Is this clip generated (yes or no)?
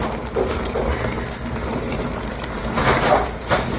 no